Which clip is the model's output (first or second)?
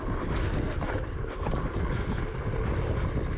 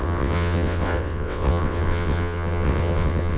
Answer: second